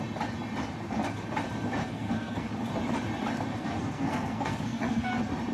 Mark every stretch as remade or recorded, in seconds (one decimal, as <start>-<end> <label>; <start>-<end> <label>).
0.0-1.8 recorded; 1.8-2.5 remade; 2.5-3.5 recorded; 3.5-5.1 remade; 5.1-5.5 recorded